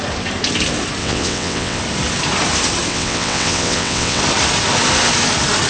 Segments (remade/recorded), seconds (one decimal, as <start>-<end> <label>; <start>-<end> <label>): 0.0-1.0 recorded; 1.0-1.8 remade; 1.8-2.9 recorded; 2.9-4.2 remade; 4.2-5.7 recorded